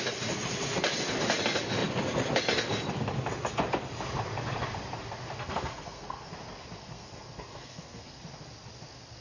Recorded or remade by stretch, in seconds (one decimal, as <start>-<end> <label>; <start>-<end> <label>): 0.0-5.4 recorded; 5.4-6.3 remade; 6.3-6.8 recorded; 6.8-8.2 remade; 8.2-9.2 recorded